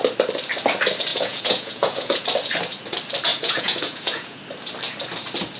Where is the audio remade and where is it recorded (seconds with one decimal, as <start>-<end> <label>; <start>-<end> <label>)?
0.0-1.1 recorded; 1.1-2.2 remade; 2.2-3.3 recorded; 3.3-4.4 remade; 4.4-5.6 recorded